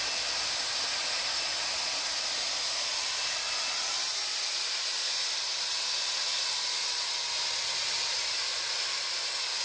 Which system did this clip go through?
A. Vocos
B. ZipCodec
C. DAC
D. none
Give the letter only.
D